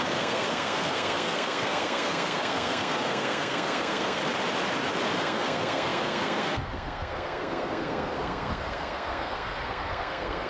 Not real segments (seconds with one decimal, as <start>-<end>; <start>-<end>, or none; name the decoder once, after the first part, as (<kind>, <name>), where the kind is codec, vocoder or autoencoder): 0.0-4.2 (codec, SNAC); 5.2-10.5